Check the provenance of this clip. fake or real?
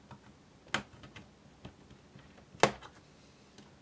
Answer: real